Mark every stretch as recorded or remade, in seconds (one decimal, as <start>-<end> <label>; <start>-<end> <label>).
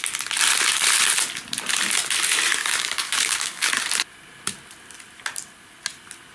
0.0-2.6 recorded; 2.6-3.7 remade; 3.7-6.3 recorded